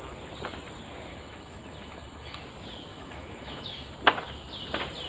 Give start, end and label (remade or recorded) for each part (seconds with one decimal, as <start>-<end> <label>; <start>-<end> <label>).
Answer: 0.0-1.1 recorded; 1.1-2.4 remade; 2.4-2.9 recorded; 2.9-3.9 remade; 3.9-5.1 recorded